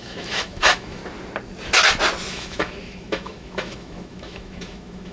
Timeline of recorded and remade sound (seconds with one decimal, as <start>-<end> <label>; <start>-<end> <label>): 0.0-1.0 remade; 1.0-2.3 recorded; 2.3-5.1 remade